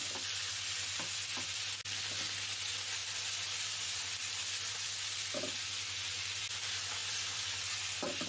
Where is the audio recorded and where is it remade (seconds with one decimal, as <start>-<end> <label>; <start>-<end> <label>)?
0.0-8.3 recorded